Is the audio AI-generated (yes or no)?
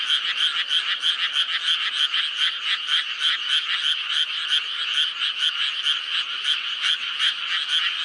no